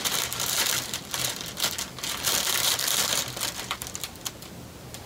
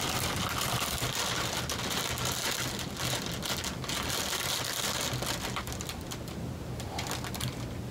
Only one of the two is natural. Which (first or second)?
second